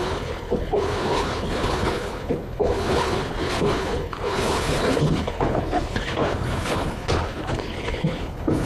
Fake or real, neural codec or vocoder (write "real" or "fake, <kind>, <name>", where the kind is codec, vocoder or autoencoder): fake, codec, HILCodec